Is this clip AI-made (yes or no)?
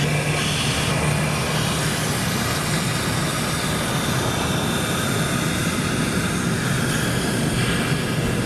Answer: no